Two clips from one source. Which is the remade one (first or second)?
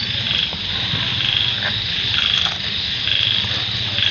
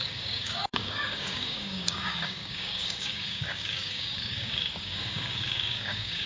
second